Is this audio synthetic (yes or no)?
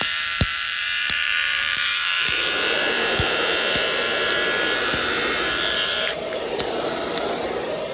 yes